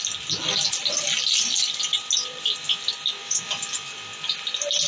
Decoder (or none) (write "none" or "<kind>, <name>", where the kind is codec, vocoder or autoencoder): none